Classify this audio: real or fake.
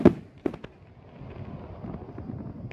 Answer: real